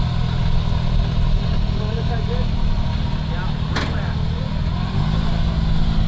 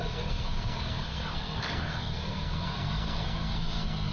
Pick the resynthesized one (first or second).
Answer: second